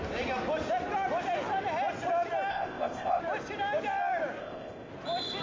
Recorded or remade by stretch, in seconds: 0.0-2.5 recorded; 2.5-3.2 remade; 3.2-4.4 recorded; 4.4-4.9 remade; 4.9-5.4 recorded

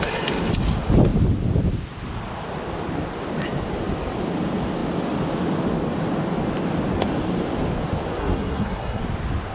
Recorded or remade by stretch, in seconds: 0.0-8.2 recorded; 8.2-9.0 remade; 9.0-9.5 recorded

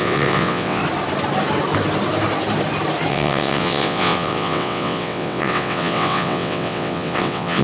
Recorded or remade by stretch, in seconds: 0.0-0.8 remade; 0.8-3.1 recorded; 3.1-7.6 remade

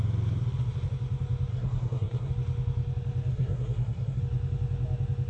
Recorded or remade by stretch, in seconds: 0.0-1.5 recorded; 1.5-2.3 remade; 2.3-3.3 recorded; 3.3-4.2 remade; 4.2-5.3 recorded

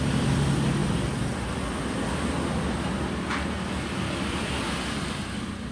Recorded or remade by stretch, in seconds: 0.0-5.7 recorded